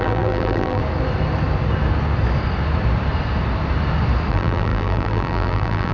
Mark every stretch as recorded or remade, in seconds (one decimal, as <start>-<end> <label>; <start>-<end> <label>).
0.0-0.8 remade; 0.8-4.3 recorded; 4.3-5.9 remade